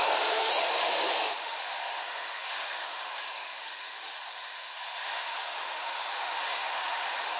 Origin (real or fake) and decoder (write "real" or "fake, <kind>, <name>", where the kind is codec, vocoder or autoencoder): fake, autoencoder, DAC-VAE